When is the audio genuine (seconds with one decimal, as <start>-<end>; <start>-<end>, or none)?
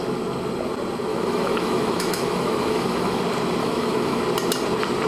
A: 0.0-1.1; 3.2-3.6; 4.2-5.1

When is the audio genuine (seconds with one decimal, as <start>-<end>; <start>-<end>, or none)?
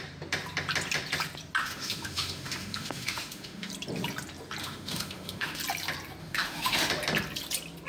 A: 0.0-1.6; 3.7-4.6; 5.6-6.2; 6.9-7.9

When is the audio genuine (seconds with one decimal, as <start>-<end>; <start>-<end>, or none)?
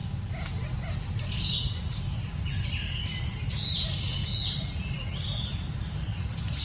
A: 0.0-6.6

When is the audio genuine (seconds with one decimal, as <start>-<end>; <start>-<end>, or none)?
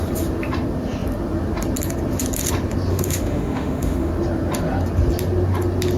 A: 0.0-2.9; 4.1-6.0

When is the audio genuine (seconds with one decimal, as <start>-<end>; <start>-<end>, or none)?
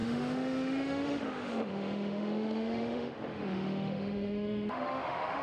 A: none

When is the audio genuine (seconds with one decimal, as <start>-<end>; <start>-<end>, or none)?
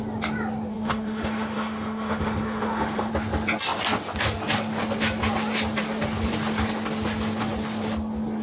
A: 0.0-0.7; 3.1-8.4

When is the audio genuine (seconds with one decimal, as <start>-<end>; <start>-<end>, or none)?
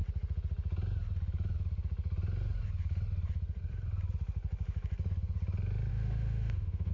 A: 0.0-5.9